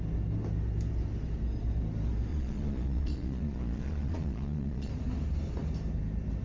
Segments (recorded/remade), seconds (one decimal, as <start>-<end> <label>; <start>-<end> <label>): 0.0-2.3 recorded; 2.3-4.9 remade; 4.9-6.4 recorded